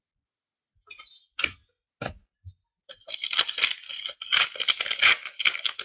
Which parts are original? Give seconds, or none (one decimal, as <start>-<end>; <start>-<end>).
0.0-5.2